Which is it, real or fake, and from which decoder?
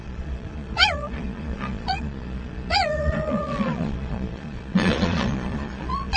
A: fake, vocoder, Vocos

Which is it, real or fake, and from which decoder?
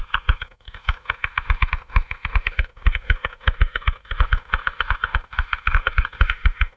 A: fake, autoencoder, DAC-VAE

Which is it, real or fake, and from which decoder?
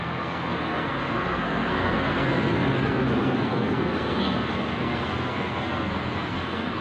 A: fake, codec, SNAC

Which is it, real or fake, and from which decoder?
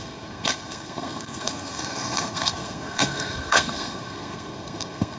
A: fake, codec, SNAC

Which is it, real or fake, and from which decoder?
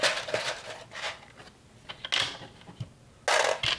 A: real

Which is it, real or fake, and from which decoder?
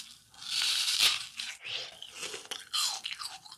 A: real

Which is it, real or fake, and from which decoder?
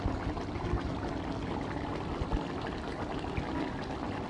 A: real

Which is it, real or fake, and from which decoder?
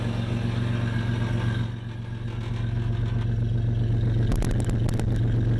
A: real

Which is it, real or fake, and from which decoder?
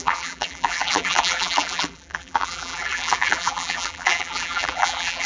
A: fake, vocoder, BigVGAN v2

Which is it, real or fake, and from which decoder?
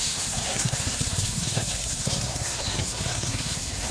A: fake, codec, SNAC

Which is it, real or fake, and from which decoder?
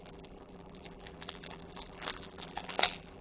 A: fake, vocoder, BigVGAN v2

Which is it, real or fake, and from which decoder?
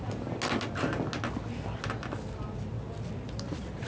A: real